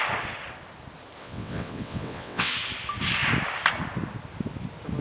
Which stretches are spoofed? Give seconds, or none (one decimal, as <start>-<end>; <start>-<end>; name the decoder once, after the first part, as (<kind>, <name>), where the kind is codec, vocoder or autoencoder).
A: 1.2-2.5 (vocoder, WaveNeXt)